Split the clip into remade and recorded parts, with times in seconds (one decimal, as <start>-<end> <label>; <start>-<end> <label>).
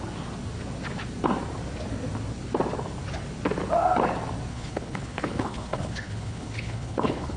0.0-4.5 recorded; 4.5-7.4 remade